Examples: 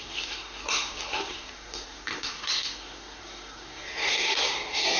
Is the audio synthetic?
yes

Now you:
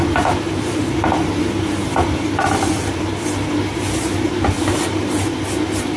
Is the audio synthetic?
no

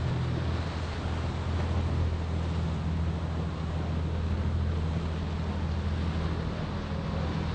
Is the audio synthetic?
no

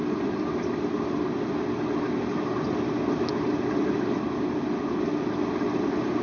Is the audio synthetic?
no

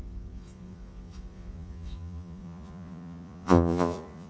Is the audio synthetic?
yes